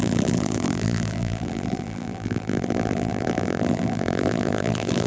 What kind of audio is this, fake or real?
fake